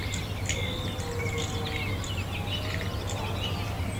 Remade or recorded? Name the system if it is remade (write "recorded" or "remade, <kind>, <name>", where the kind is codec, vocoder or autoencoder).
recorded